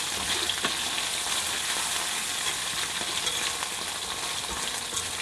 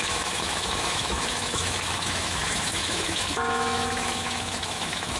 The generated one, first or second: second